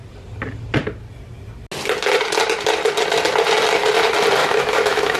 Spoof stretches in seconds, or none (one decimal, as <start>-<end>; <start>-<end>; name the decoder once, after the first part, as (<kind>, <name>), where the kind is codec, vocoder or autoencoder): 4.4-5.2 (autoencoder, DAC-VAE)